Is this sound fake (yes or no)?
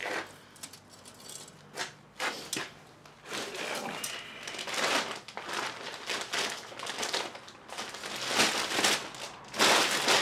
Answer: no